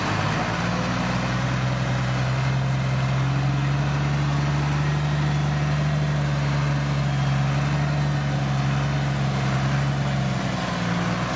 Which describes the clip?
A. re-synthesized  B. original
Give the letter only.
B